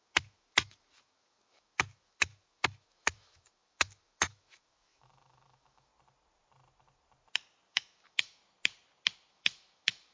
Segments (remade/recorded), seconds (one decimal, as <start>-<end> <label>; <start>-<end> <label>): 0.0-5.9 remade; 5.9-7.7 recorded; 7.7-8.4 remade; 8.4-9.3 recorded; 9.3-10.1 remade